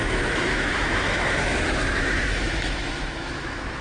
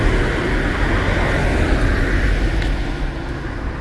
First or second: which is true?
second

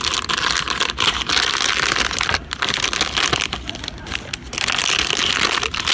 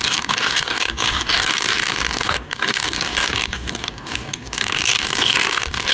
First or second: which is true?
first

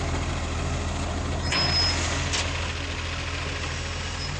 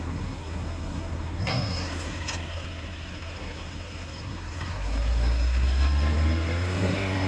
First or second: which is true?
first